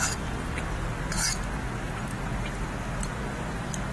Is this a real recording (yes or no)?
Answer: yes